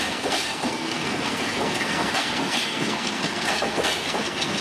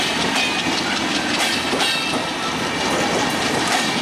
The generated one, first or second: first